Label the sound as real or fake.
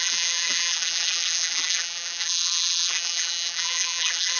fake